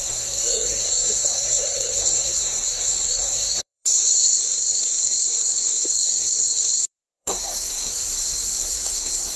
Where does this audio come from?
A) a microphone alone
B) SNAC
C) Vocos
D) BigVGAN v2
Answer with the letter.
B